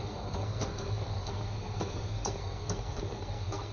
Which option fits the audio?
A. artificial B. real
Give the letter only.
A